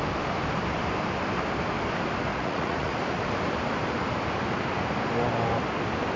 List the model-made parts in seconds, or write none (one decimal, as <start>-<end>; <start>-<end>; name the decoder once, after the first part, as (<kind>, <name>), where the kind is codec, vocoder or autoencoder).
2.3-2.9 (vocoder, Vocos)